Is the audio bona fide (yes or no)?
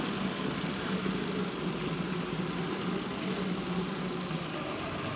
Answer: yes